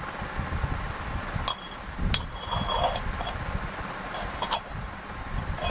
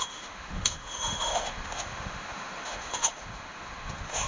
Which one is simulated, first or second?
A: second